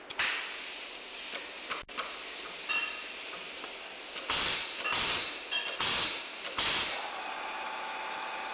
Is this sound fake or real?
real